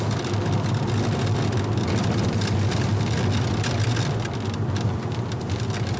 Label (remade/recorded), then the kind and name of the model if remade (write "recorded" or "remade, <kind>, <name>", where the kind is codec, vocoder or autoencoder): recorded